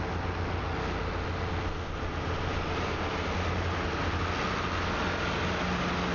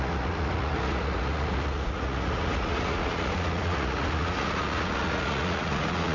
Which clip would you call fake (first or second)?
second